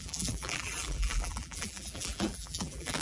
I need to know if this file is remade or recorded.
remade